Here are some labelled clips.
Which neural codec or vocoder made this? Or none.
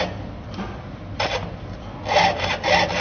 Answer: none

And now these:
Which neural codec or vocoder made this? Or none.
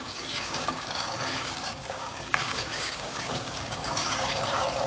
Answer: codec, DAC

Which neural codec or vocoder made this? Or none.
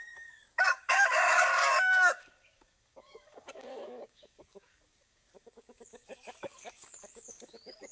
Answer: codec, DAC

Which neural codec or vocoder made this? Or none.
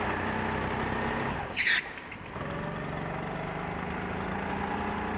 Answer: none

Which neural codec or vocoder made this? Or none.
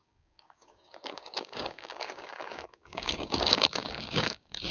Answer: codec, DAC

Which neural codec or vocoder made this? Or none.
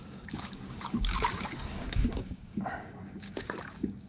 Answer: codec, DAC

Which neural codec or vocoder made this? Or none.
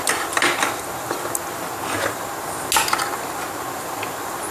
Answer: none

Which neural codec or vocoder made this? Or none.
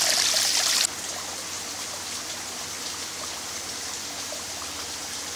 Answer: none